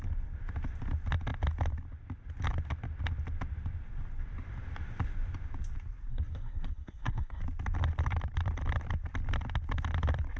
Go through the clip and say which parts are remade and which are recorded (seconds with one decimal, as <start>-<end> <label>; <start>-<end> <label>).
0.0-6.1 recorded; 6.1-7.4 remade; 7.4-10.4 recorded